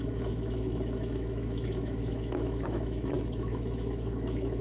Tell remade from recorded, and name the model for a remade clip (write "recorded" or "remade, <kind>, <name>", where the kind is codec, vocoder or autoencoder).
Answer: remade, autoencoder, DAC-VAE